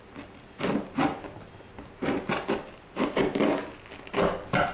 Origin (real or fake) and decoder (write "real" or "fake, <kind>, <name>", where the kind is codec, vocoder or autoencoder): real